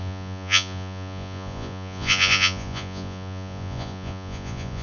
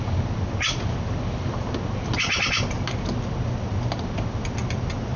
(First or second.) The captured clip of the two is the second